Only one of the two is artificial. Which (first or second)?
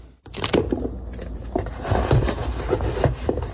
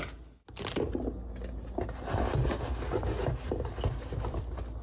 first